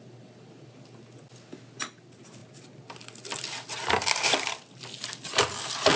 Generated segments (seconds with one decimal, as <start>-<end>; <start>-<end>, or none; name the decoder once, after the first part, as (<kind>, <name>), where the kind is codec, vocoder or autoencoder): none

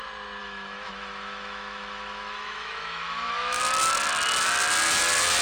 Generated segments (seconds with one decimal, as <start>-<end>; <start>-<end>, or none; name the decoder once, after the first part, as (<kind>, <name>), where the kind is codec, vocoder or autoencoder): 0.4-3.6 (autoencoder, DAC-VAE)

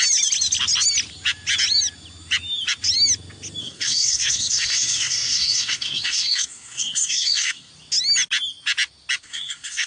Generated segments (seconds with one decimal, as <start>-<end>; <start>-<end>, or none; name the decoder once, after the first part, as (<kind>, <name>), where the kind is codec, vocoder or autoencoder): 3.6-7.7 (codec, SNAC); 9.2-9.9

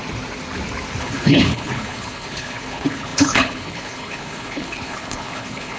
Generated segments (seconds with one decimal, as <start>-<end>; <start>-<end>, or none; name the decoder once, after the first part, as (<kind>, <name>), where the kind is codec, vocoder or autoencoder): 1.0-5.8 (codec, HILCodec)

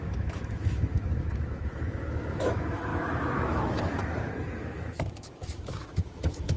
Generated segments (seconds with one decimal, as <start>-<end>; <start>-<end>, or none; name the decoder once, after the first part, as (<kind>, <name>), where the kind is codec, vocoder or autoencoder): 0.0-6.6 (autoencoder, DAC-VAE)

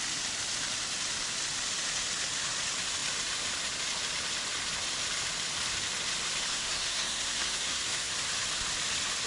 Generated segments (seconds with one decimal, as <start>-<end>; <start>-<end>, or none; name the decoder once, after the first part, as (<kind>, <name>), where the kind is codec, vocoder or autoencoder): 6.5-8.1 (codec, SNAC)